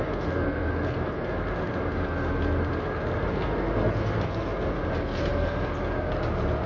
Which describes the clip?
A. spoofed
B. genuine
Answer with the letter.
B